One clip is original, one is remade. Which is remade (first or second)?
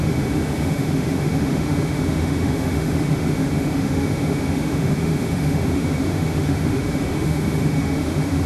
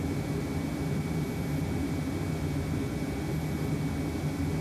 first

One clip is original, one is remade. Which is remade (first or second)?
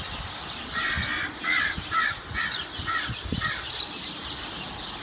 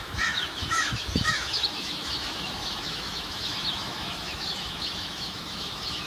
second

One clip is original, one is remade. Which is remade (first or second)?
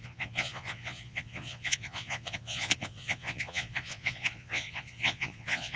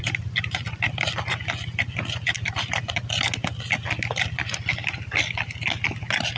first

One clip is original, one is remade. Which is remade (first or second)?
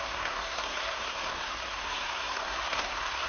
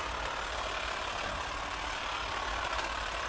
first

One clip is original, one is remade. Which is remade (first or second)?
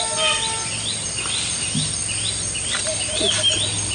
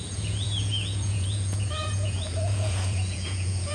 second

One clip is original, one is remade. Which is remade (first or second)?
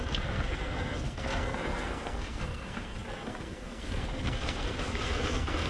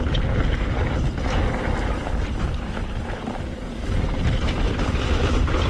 first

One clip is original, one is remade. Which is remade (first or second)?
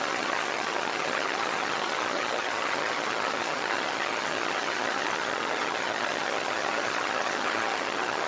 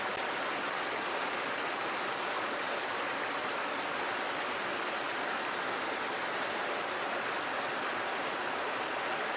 first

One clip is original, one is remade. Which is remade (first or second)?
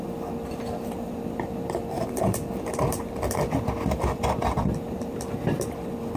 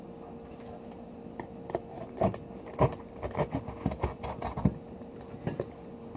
first